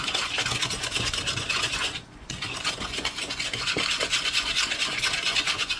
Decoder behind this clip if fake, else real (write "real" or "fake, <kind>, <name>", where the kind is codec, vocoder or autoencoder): fake, vocoder, Vocos